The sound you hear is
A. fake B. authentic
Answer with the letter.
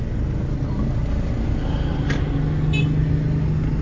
B